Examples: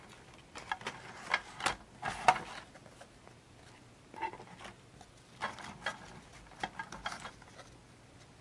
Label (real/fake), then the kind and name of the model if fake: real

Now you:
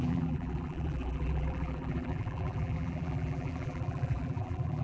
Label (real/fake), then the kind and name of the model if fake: fake, vocoder, BigVGAN v2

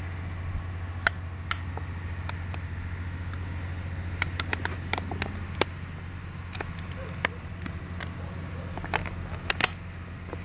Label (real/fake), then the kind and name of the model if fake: real